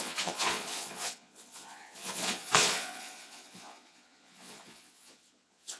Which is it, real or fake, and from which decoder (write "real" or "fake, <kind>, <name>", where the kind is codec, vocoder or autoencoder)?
fake, vocoder, Vocos